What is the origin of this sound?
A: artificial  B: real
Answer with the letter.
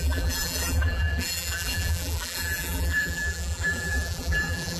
A